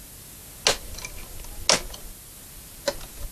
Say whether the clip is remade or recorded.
recorded